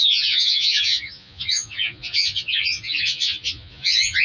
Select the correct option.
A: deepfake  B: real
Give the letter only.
A